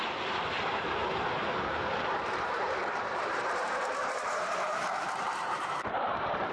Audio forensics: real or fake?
fake